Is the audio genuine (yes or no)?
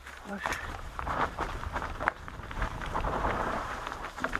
no